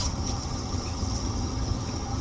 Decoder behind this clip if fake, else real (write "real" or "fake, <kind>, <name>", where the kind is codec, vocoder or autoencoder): fake, vocoder, HiFi-GAN